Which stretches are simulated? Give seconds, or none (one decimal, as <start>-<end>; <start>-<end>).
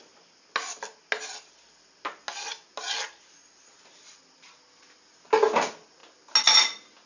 none